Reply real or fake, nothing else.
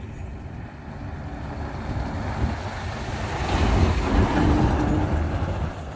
real